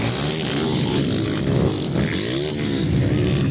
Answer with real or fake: real